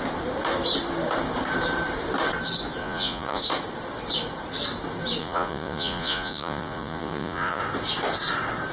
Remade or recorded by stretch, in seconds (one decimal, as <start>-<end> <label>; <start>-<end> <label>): 0.0-2.8 recorded; 2.8-3.4 remade; 3.4-5.2 recorded; 5.2-7.6 remade; 7.6-8.7 recorded